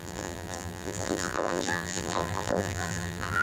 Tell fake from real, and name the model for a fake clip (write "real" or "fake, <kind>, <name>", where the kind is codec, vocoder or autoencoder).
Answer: fake, vocoder, BigVGAN v2